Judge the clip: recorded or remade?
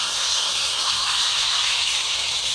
remade